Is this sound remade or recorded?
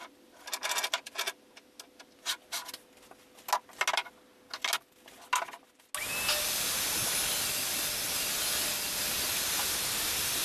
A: recorded